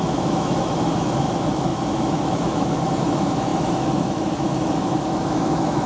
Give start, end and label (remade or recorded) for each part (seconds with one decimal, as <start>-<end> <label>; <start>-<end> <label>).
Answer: 0.0-5.9 remade